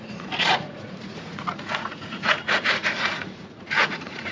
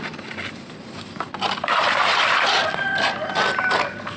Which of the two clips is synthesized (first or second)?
first